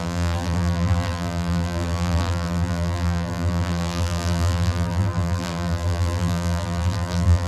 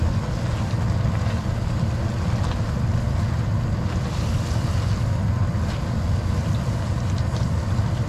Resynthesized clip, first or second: first